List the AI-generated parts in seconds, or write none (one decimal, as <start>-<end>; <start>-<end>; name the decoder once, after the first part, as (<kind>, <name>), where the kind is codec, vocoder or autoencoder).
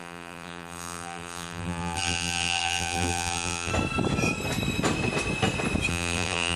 0.0-3.7 (vocoder, BigVGAN v2); 5.9-6.6